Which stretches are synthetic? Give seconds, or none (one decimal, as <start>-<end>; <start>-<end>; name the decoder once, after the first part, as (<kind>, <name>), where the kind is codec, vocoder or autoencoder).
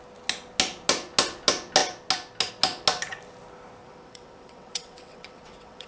3.8-5.9 (vocoder, WaveNeXt)